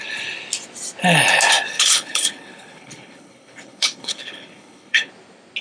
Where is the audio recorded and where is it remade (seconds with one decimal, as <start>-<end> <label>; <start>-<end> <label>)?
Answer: 0.0-1.7 recorded; 1.7-5.1 remade; 5.1-5.6 recorded